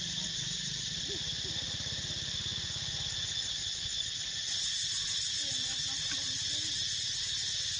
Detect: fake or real fake